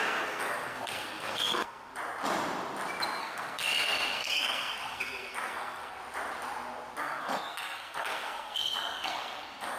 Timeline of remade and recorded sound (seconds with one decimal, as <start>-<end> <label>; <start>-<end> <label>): 0.0-1.9 remade; 1.9-3.2 recorded; 3.2-6.0 remade; 6.0-7.0 recorded; 7.0-9.8 remade